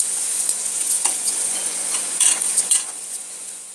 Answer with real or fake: fake